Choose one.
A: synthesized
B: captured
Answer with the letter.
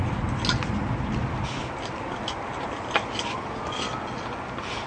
B